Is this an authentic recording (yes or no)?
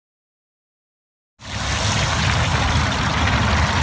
yes